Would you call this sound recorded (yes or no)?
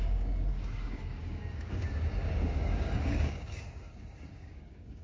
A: no